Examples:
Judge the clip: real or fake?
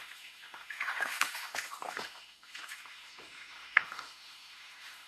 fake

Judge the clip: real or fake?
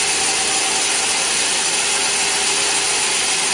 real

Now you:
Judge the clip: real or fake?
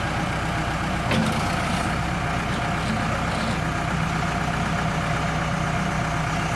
real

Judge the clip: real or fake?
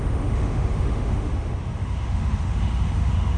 fake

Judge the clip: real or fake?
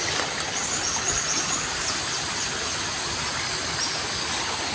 real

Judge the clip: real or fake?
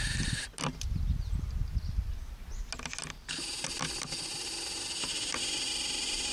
real